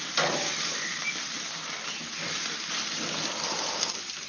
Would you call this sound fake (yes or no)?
no